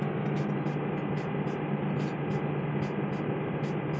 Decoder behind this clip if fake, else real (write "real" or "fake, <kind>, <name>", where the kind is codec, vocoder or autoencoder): real